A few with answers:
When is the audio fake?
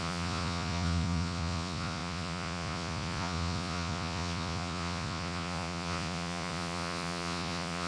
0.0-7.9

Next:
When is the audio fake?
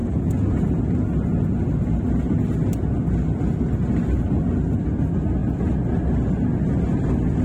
0.0-0.8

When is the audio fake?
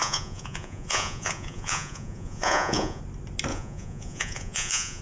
0.0-3.0; 3.5-5.0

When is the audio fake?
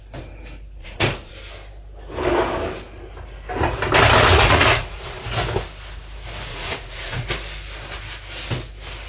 0.8-1.3; 4.3-5.2; 6.5-7.3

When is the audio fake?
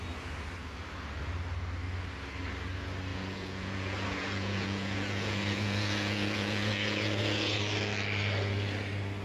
3.1-7.6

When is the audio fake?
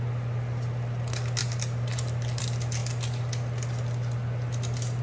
none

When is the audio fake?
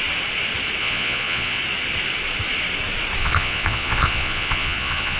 0.8-1.6; 3.2-5.2